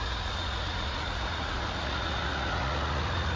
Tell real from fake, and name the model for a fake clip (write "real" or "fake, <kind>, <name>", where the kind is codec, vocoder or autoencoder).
fake, vocoder, Vocos